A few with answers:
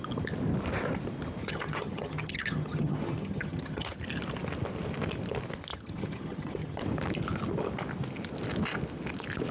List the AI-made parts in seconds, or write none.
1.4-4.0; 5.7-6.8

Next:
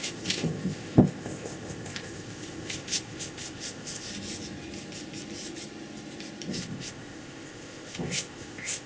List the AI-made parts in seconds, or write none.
0.0-4.1; 6.5-8.9

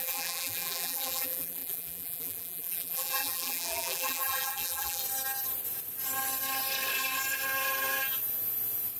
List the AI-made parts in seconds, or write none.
0.0-5.0

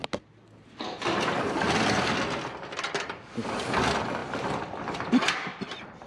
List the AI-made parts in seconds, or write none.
4.2-4.7